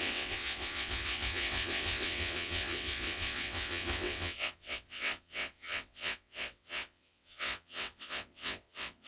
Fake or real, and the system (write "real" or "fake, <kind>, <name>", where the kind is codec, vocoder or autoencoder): fake, vocoder, WaveNeXt